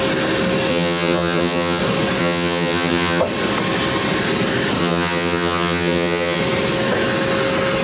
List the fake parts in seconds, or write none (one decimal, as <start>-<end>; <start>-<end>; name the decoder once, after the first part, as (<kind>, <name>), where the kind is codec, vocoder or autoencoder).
0.7-1.8 (vocoder, HiFi-GAN); 2.2-3.2; 4.8-6.4

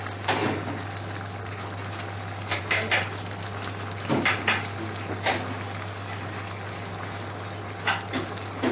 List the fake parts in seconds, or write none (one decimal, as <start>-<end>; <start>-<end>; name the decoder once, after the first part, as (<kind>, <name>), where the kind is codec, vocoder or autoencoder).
none

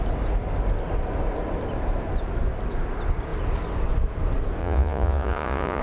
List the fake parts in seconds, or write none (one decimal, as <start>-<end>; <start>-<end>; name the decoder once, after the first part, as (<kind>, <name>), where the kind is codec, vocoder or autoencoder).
4.6-5.8 (vocoder, Vocos)

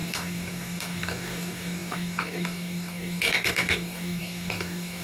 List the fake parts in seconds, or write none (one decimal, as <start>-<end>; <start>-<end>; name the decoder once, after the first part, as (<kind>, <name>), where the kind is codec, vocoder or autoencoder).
0.0-5.0 (codec, DAC)

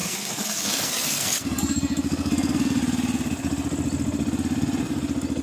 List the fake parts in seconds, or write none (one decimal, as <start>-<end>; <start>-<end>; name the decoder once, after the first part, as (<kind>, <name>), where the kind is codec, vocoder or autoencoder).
0.0-2.8 (codec, SNAC)

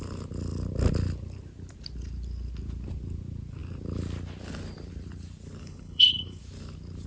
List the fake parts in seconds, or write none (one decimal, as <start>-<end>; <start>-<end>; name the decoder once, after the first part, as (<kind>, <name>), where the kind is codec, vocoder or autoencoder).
5.6-6.4 (codec, HILCodec)

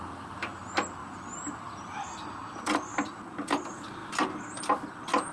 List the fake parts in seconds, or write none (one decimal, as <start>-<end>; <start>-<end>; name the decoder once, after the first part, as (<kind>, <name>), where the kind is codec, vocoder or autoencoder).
none